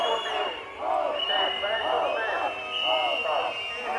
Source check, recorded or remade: recorded